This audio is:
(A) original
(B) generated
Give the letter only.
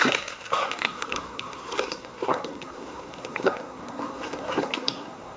B